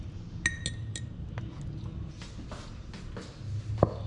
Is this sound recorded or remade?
recorded